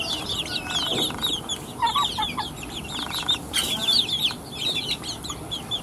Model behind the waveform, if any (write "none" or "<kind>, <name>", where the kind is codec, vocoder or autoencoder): vocoder, BigVGAN v2